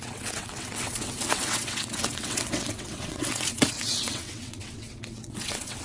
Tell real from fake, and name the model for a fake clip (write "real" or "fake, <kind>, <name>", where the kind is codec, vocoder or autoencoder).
fake, vocoder, WaveNeXt